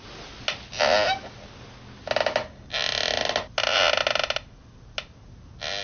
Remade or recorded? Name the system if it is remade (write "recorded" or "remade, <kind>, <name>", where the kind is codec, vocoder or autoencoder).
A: recorded